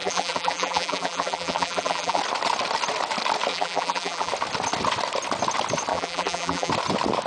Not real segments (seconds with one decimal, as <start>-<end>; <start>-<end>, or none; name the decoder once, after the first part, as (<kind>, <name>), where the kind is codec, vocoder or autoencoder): 0.0-2.2 (vocoder, BigVGAN v2); 3.5-4.3; 5.9-6.7